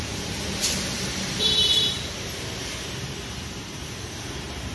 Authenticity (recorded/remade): remade